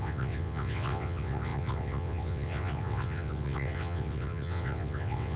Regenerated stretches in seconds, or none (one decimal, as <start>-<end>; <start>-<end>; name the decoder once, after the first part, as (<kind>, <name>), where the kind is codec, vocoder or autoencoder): 0.0-5.4 (vocoder, WaveNeXt)